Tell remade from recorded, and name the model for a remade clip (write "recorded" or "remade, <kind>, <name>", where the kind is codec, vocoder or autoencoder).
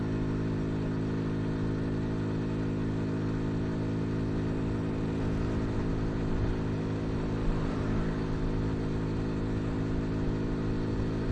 recorded